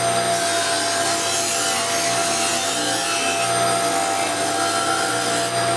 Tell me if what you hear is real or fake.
real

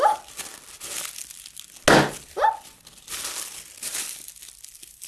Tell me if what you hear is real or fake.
real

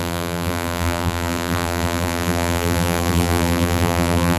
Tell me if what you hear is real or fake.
fake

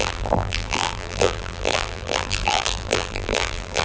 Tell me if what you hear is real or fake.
fake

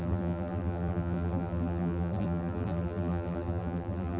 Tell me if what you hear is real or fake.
fake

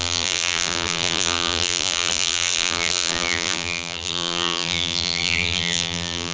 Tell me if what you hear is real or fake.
fake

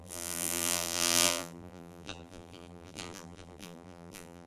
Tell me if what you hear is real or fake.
fake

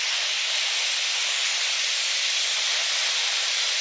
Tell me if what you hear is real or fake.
real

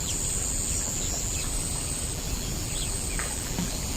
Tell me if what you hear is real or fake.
fake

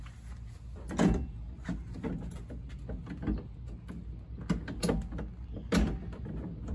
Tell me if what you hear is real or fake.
real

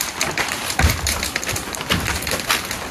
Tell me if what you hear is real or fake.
fake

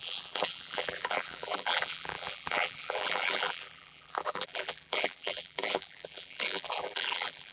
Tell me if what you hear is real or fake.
fake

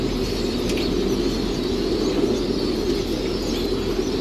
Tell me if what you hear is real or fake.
real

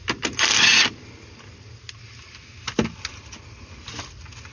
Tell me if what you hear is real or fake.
real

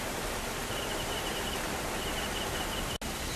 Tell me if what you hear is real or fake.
real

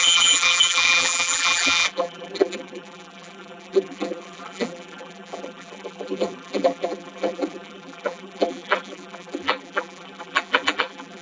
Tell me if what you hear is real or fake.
fake